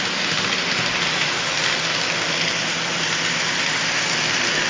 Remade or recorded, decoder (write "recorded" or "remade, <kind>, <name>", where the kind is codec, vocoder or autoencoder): recorded